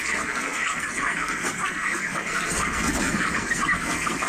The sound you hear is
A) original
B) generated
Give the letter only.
B